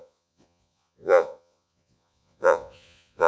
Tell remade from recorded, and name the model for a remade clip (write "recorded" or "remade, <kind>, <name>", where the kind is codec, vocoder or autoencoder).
remade, vocoder, Vocos